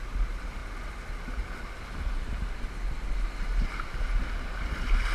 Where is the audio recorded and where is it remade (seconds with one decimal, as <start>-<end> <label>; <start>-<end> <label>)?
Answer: 0.0-5.1 recorded